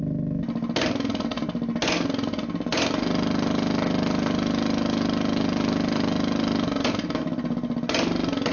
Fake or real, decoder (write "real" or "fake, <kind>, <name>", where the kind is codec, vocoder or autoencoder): real